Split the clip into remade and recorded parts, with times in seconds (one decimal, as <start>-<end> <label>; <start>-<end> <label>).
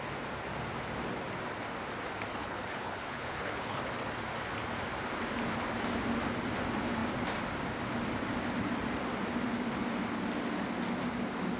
0.0-2.3 recorded; 2.3-3.8 remade; 3.8-11.6 recorded